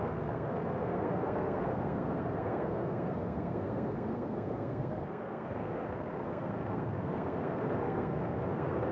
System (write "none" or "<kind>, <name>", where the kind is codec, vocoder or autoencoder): codec, SNAC